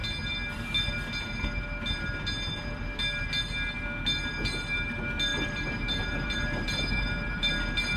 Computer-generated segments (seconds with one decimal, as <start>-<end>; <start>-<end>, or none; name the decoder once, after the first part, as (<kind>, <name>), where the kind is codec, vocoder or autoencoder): 5.3-7.5 (vocoder, BigVGAN v2)